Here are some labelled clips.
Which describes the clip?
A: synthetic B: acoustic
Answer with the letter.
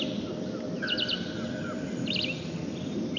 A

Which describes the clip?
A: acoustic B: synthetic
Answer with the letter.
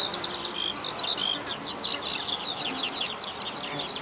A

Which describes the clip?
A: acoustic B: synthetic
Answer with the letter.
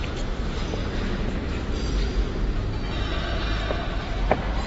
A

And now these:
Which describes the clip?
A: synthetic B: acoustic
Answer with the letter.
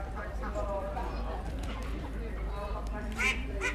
A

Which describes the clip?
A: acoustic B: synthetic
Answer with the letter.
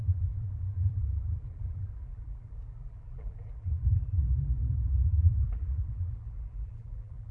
B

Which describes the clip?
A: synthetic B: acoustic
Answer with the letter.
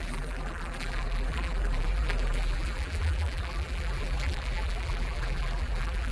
A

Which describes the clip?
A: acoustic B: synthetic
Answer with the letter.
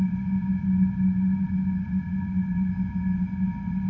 A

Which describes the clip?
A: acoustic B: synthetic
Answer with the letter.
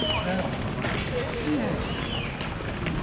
A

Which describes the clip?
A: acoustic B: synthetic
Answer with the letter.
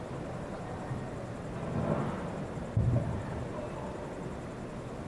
A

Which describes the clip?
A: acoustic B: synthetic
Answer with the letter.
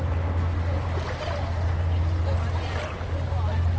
A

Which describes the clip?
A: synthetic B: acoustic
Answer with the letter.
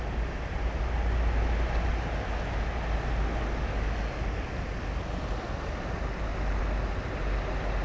B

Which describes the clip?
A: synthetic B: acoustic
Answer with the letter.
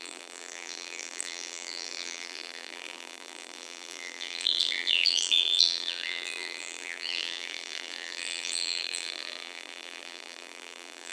A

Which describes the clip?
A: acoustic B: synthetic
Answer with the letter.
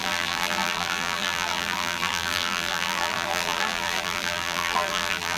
B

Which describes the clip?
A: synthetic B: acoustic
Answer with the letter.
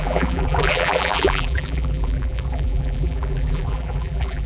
A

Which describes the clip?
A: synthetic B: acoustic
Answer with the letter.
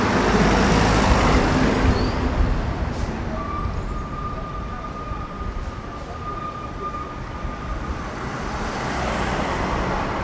B